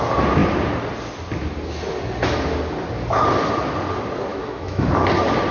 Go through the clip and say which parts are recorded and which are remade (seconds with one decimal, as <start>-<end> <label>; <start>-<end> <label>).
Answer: 0.0-4.3 recorded; 4.3-4.9 remade; 4.9-5.5 recorded